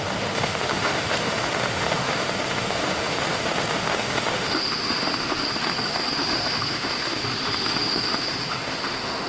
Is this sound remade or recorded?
remade